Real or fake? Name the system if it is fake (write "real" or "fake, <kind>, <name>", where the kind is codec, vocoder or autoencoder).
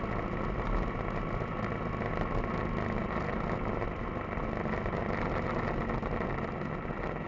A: real